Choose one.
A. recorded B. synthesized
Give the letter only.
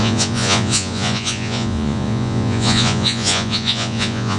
B